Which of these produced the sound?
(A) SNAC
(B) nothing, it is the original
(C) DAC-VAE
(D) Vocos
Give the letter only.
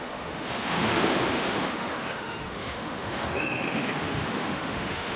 C